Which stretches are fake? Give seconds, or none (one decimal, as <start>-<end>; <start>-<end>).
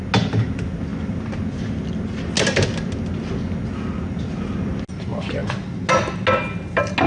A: none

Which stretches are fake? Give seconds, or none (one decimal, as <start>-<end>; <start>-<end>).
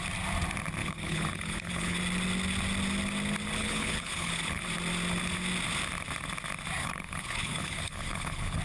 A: 0.8-2.0; 3.6-4.6; 6.8-8.6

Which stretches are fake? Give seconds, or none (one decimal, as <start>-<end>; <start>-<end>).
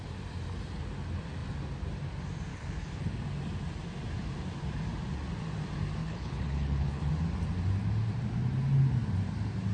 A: 2.5-3.1; 6.0-7.1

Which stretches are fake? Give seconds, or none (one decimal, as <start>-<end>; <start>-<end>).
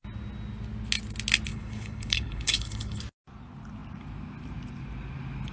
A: 1.5-3.0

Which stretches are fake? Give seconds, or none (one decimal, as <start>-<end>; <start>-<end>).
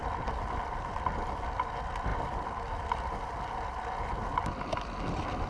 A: none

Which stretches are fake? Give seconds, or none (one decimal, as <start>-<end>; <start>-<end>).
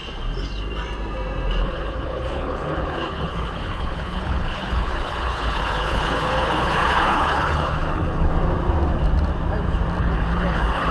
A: 1.6-8.3; 10.0-10.9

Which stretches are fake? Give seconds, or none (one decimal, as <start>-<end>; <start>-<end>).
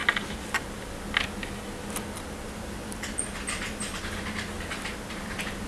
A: none